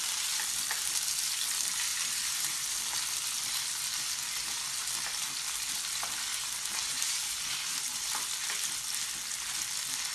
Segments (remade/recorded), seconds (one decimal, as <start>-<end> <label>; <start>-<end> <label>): 0.0-1.9 recorded; 1.9-2.8 remade; 2.8-6.3 recorded; 6.3-8.0 remade; 8.0-10.1 recorded